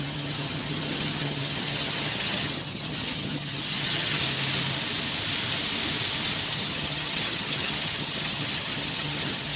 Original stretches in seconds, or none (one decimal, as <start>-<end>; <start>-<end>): 4.2-6.5